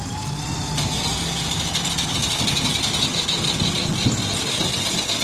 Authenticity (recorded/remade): recorded